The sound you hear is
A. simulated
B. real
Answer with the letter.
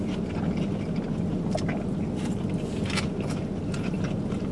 A